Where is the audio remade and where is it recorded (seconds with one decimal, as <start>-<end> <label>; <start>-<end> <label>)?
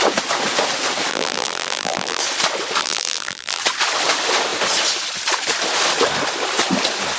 0.0-1.1 recorded; 1.1-2.2 remade; 2.2-2.8 recorded; 2.8-3.6 remade; 3.6-7.2 recorded